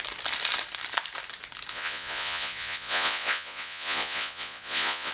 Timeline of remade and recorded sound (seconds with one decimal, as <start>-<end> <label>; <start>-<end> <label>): 0.0-1.7 recorded; 1.7-5.1 remade

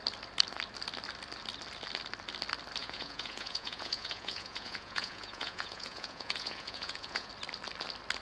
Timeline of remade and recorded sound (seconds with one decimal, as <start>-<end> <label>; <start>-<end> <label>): 0.0-2.8 recorded; 2.8-7.3 remade; 7.3-8.2 recorded

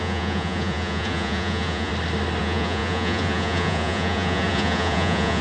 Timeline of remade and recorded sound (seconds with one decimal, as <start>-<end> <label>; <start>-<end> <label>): 0.0-1.9 remade; 1.9-2.4 recorded; 2.4-5.4 remade